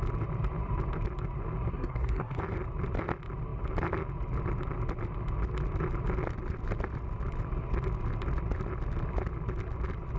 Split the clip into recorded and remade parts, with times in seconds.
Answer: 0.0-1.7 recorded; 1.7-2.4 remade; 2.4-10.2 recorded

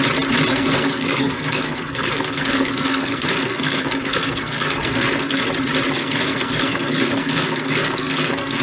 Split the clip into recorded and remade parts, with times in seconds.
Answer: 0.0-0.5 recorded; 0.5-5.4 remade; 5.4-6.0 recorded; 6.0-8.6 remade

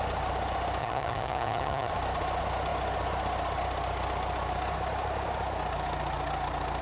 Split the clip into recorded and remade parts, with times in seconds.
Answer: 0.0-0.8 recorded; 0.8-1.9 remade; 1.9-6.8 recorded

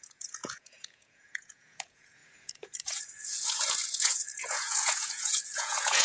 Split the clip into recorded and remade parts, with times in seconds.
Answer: 0.0-6.0 remade

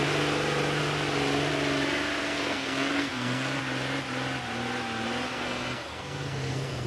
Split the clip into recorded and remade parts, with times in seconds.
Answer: 0.0-2.2 recorded; 2.2-3.6 remade; 3.6-5.3 recorded; 5.3-6.9 remade

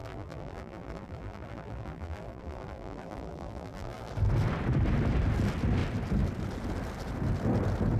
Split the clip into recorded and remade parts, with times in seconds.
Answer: 0.0-4.1 remade; 4.1-8.0 recorded

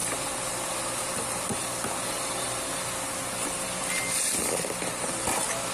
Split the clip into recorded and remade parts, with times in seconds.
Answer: 0.0-5.7 recorded